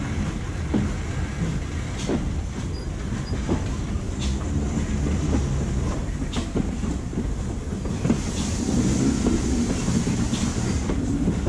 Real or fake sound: real